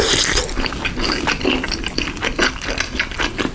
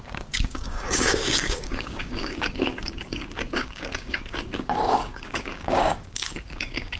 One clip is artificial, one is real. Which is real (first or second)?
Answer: first